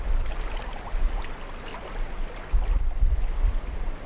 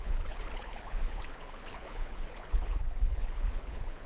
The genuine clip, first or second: first